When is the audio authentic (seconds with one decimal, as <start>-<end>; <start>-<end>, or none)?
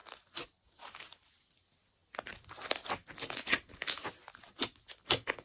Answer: 0.0-5.4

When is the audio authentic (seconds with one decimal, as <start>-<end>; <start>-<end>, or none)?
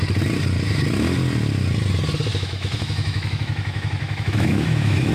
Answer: 0.0-2.3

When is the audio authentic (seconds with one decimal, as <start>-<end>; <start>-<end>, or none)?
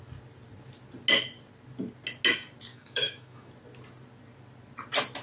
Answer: 0.0-2.7; 3.5-5.2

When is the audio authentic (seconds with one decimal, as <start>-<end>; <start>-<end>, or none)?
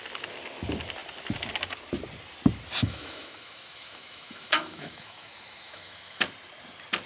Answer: 0.0-2.8; 6.2-7.1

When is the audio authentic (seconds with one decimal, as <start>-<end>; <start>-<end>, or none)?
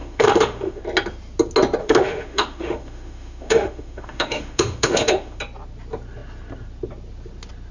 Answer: 0.8-1.8; 5.4-7.7